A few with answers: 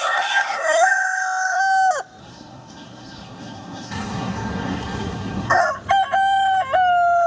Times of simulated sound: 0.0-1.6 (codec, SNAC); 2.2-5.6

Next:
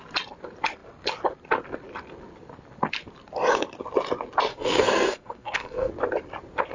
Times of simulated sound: 4.5-5.9 (codec, SNAC)

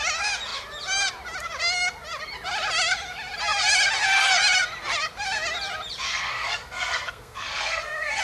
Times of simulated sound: 6.1-8.2 (codec, SNAC)

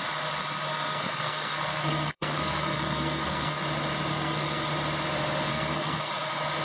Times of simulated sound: 0.7-3.6 (codec, SNAC); 4.1-4.7; 5.5-6.1